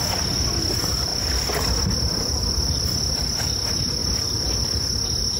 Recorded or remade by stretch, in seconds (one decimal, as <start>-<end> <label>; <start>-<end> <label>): 0.0-5.4 recorded